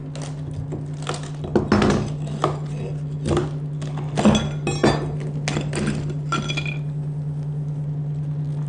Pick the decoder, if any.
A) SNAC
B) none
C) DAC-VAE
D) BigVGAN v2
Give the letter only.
B